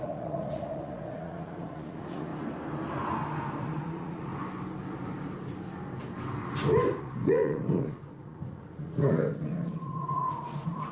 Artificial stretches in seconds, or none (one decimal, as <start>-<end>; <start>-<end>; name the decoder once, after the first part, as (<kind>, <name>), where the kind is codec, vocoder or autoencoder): 0.0-2.3 (vocoder, Vocos); 3.6-4.3; 7.0-10.9